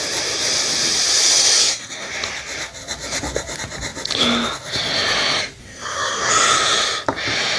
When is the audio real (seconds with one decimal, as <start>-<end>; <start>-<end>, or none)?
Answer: 0.0-1.6; 2.1-5.6; 6.3-7.6